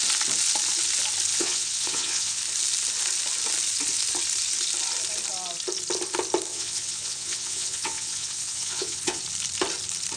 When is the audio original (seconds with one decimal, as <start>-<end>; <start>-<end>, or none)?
0.0-1.3; 2.4-6.5; 9.2-10.2